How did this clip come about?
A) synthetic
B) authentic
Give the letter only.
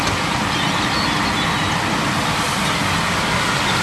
B